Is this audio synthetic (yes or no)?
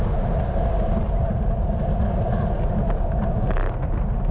no